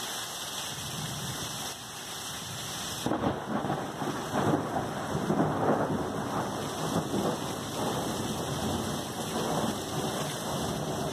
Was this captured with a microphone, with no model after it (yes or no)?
yes